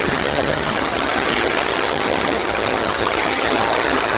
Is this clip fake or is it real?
fake